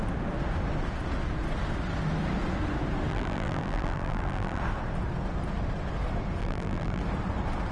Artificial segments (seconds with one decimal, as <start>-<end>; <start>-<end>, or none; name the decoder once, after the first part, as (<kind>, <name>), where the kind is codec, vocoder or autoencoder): 3.1-4.6 (vocoder, BigVGAN v2); 6.4-7.0